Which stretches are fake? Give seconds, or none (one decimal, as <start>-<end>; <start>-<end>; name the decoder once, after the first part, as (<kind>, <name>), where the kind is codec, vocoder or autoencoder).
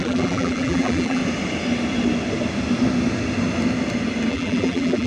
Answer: 0.0-1.2 (vocoder, BigVGAN v2); 4.3-5.1